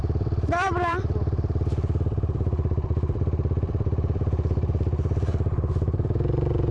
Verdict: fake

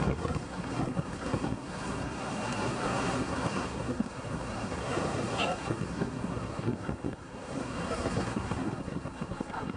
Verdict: fake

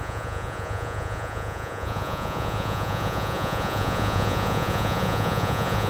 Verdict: fake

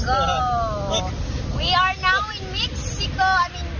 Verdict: real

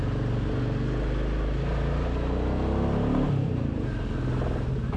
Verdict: real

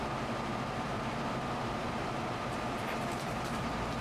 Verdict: fake